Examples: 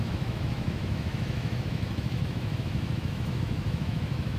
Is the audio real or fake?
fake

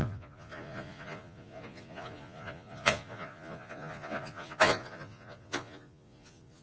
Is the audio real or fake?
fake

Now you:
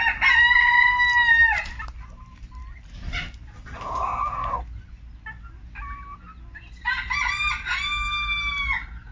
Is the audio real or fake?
real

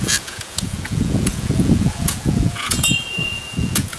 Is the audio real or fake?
fake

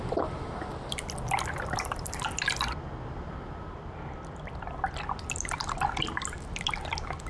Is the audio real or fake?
fake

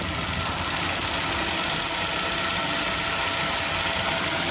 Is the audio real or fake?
real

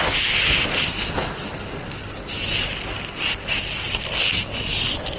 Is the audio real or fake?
real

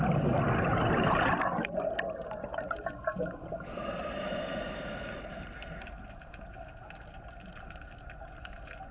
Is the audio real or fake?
real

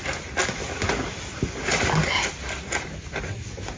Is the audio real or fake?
real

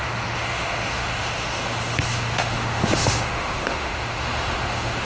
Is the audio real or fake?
fake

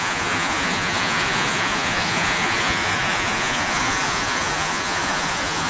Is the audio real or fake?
fake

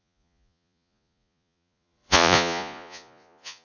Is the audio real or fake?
fake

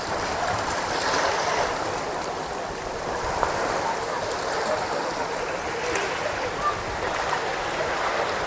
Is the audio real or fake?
real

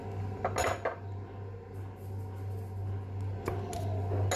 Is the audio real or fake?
real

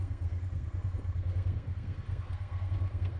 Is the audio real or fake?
fake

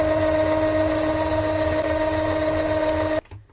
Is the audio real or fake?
real